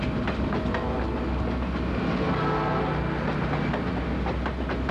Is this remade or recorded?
recorded